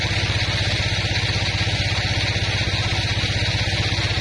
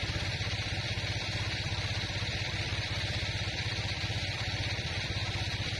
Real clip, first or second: first